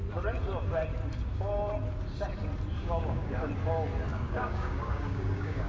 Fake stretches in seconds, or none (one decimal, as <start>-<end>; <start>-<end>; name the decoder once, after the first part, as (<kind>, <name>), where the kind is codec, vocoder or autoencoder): 2.8-3.3 (codec, DAC); 4.1-5.7